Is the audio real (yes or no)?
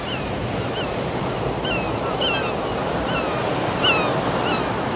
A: yes